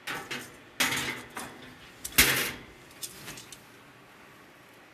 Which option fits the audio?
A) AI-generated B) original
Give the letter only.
B